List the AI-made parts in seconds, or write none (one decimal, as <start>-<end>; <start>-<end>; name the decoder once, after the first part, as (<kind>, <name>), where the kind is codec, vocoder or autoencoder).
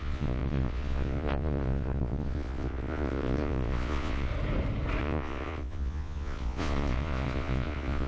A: 0.0-4.3 (vocoder, Vocos); 5.0-8.1